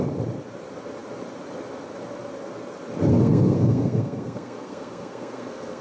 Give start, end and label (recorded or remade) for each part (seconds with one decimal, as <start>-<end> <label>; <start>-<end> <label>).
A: 0.0-3.1 recorded; 3.1-5.8 remade